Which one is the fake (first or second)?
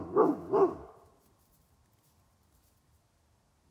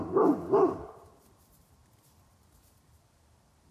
second